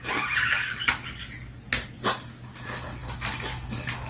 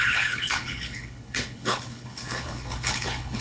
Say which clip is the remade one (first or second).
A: second